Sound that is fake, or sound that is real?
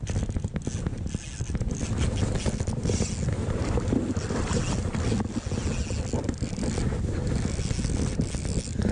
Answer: real